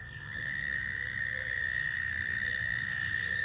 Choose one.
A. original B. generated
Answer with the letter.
B